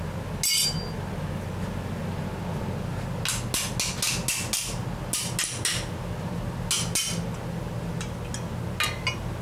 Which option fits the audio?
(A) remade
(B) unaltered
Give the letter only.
B